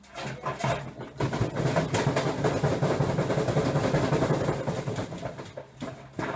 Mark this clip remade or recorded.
recorded